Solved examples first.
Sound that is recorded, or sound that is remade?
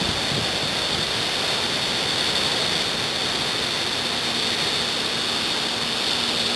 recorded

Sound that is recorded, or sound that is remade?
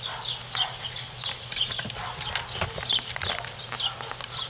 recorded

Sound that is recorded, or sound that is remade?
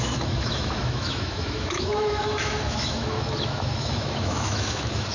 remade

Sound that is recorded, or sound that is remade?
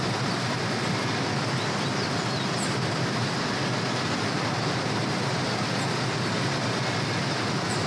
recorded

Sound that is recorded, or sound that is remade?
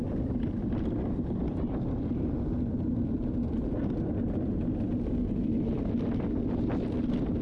recorded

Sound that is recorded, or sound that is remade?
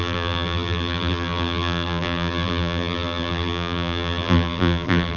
remade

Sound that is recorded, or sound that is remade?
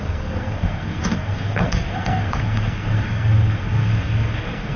remade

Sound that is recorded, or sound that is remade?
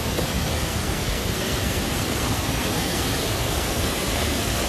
remade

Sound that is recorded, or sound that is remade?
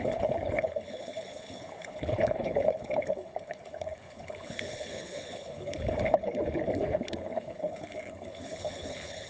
remade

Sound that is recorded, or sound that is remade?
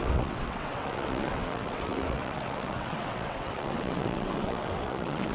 remade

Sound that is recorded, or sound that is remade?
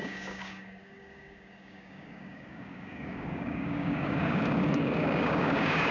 remade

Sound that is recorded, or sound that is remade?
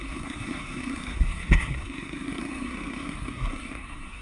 remade